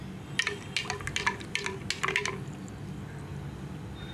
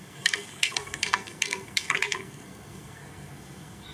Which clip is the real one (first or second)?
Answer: first